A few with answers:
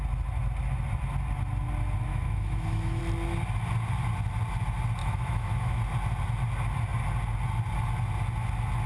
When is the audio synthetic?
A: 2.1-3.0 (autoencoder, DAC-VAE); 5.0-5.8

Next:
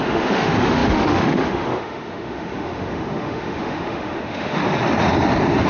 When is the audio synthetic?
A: 0.0-4.6 (autoencoder, DAC-VAE)

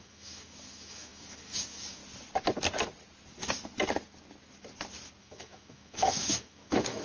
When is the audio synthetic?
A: 0.0-2.0 (autoencoder, DAC-VAE); 5.2-7.0

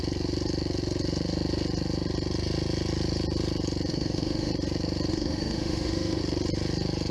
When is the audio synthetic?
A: 3.9-4.5 (autoencoder, DAC-VAE); 5.1-6.2

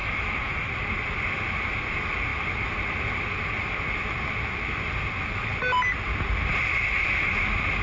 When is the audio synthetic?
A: 0.0-0.7 (autoencoder, DAC-VAE)

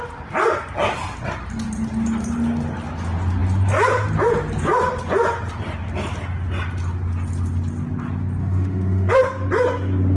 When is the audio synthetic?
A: 8.4-9.1 (autoencoder, DAC-VAE)

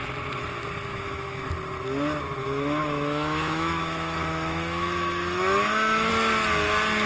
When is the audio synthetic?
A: 0.9-1.5 (autoencoder, DAC-VAE); 2.4-6.1

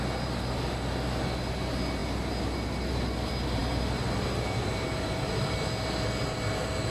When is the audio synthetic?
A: none